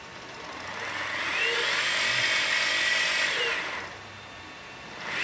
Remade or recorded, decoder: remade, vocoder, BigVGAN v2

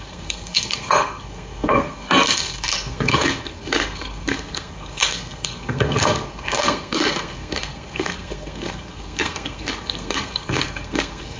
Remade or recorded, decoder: remade, codec, SNAC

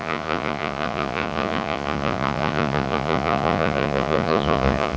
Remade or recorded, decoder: remade, vocoder, Vocos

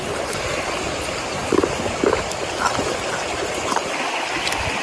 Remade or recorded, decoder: recorded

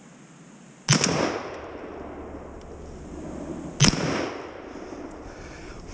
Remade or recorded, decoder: recorded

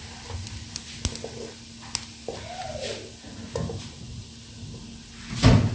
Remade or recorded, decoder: recorded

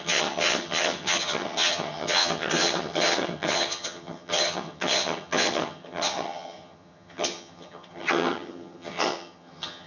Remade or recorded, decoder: remade, vocoder, HiFi-GAN